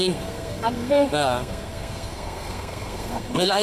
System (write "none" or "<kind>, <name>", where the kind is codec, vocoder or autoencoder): codec, SNAC